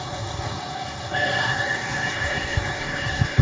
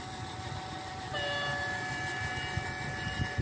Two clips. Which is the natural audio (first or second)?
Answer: second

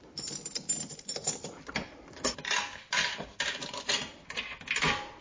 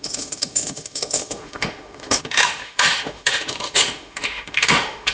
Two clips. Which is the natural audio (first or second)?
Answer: first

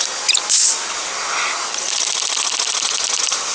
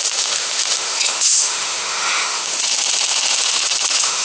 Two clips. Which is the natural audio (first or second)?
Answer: first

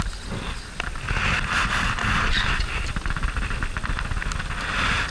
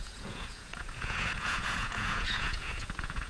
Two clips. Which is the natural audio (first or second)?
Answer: first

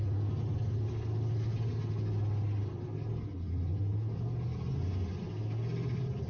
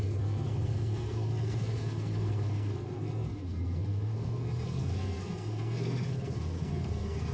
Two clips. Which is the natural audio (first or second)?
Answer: first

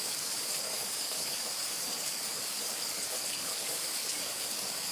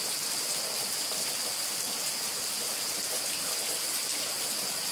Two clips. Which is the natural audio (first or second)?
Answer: second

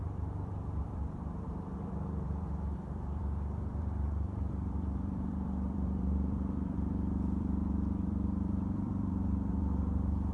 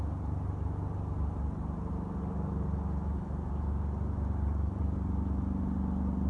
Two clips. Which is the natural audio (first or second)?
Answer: second